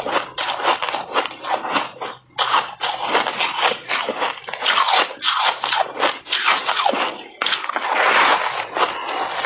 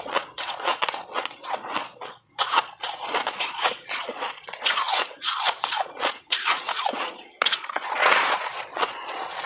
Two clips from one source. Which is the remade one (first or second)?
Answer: second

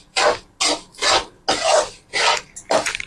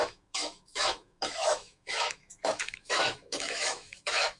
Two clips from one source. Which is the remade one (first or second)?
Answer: second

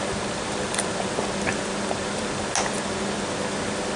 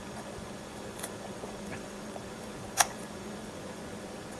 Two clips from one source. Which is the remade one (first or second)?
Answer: second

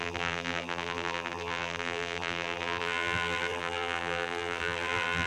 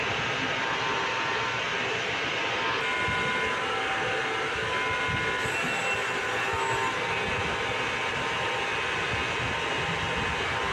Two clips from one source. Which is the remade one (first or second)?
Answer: first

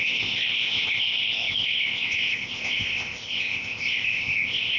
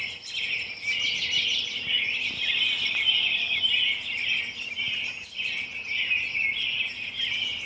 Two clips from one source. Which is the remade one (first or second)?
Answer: first